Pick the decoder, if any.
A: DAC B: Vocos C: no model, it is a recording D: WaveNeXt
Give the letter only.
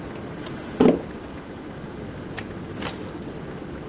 C